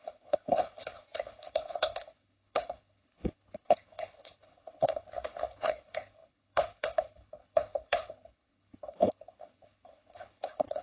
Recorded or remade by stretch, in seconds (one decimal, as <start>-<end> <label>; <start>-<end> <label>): 0.0-10.8 remade